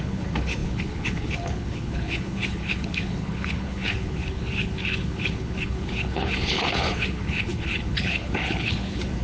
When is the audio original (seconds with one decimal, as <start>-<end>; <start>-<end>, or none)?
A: none